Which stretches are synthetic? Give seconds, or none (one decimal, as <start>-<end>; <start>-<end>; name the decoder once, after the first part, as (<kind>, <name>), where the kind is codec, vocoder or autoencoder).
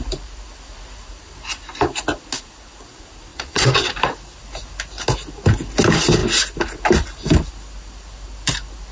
3.3-3.9 (vocoder, WaveNeXt)